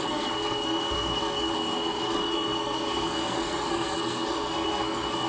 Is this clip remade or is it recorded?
remade